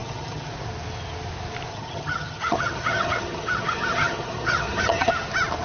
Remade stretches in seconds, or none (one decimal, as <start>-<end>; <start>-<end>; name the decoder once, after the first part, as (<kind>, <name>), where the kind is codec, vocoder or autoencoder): 0.0-0.5 (vocoder, HiFi-GAN); 1.7-5.1